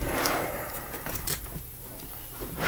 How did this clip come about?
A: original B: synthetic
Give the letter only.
B